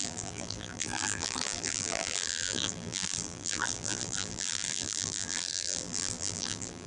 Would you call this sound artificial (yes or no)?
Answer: yes